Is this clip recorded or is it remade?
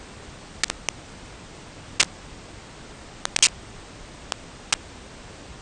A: recorded